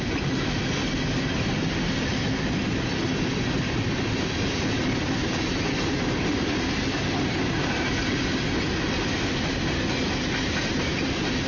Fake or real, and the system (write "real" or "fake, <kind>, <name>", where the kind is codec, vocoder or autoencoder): real